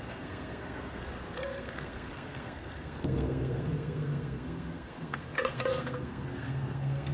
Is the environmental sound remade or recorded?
remade